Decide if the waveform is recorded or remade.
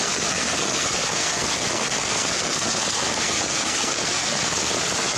remade